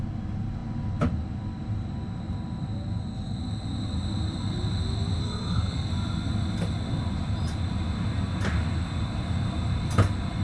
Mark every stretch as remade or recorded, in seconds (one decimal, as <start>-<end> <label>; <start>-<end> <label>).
0.0-5.2 recorded; 5.2-5.9 remade; 5.9-10.4 recorded